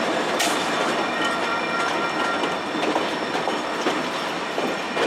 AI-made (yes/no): no